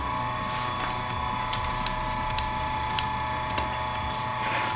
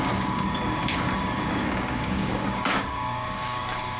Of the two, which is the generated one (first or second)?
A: second